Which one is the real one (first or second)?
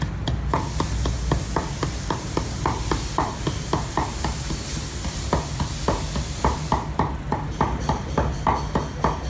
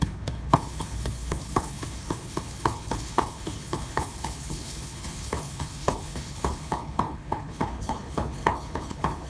first